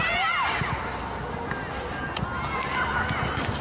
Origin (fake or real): real